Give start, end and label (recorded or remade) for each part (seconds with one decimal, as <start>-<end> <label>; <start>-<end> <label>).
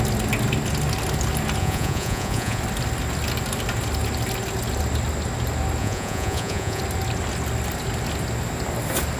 0.0-1.6 recorded; 1.6-2.6 remade; 2.6-5.8 recorded; 5.8-6.8 remade; 6.8-9.2 recorded